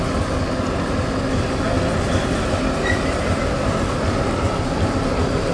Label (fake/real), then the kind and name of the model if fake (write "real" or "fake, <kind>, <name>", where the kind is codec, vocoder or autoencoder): real